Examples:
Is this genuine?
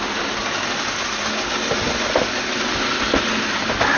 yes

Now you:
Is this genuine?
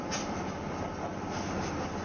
yes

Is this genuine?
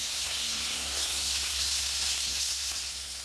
no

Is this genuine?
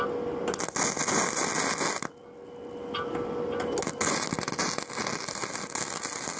yes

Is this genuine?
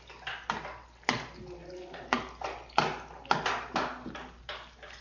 yes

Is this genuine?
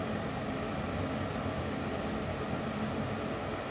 yes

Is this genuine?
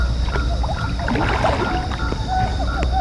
yes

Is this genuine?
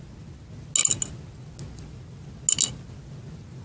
yes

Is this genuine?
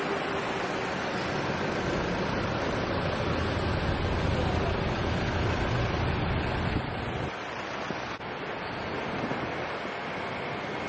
yes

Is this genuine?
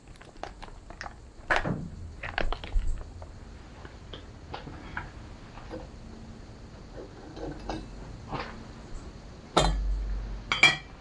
yes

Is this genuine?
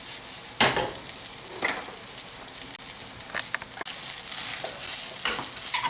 yes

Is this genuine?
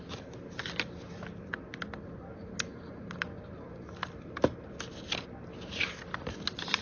yes